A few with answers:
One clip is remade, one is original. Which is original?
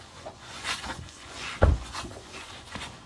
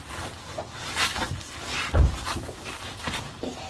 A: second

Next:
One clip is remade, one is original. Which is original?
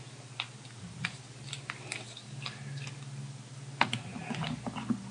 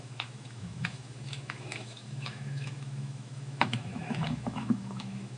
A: first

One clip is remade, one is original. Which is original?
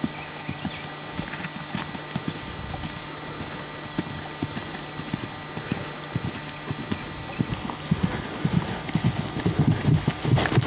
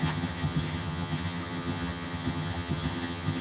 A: first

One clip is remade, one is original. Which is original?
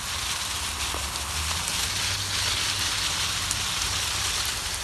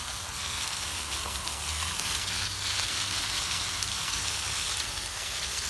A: first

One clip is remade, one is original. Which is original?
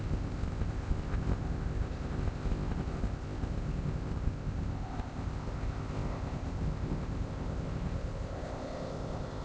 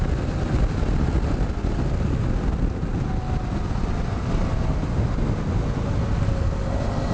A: second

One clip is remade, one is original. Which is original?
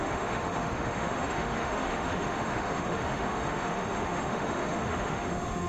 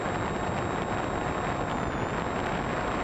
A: second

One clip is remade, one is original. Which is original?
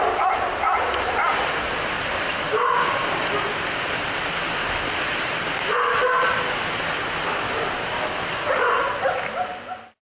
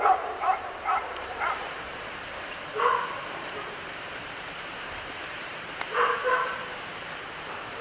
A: first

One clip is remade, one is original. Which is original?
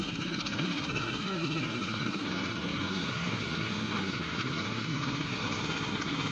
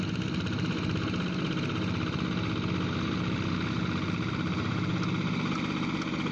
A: second